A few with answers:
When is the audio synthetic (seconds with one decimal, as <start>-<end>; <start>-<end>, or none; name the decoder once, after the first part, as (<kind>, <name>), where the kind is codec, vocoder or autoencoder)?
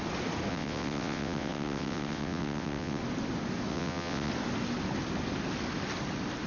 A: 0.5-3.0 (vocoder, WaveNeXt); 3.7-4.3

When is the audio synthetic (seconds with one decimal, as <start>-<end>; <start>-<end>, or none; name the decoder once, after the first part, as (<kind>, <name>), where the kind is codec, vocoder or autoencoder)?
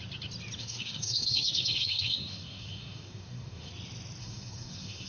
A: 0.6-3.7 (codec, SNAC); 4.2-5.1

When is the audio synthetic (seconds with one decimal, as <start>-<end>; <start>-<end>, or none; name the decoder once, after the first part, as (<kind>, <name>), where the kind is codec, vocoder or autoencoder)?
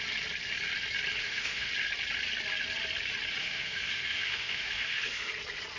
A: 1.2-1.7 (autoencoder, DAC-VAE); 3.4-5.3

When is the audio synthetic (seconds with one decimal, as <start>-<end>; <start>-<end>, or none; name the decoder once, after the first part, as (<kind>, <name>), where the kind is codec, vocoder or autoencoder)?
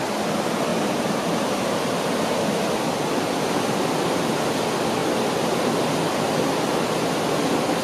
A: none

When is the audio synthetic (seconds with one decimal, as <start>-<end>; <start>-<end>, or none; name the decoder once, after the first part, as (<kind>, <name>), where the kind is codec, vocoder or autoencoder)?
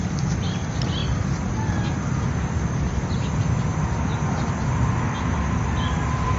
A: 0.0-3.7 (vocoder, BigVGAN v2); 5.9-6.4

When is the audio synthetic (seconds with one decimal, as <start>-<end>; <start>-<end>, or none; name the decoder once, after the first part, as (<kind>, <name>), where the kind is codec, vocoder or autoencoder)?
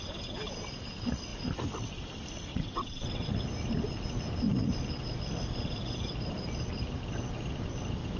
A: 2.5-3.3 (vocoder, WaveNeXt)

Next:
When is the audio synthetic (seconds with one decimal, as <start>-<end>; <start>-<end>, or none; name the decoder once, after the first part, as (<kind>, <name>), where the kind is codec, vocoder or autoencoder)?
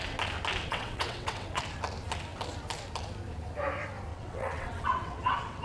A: 0.7-1.6 (vocoder, WaveNeXt); 4.1-5.6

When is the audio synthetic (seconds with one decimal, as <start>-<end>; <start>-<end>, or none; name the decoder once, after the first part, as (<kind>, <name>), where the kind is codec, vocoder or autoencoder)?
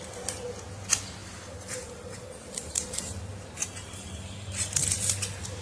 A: 1.2-2.9 (vocoder, BigVGAN v2); 3.6-5.1